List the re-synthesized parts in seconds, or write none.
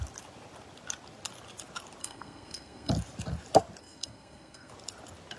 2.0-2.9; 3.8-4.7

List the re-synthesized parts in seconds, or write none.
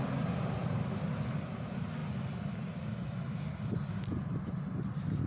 none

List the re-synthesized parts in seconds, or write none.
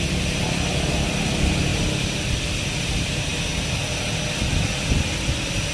0.0-3.3; 4.3-5.7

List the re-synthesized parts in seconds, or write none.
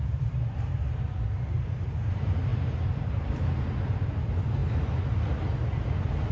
0.0-4.6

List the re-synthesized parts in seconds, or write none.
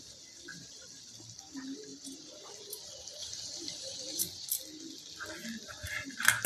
1.9-2.5; 3.2-4.2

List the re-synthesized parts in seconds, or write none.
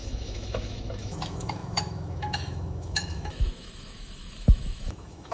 0.0-5.3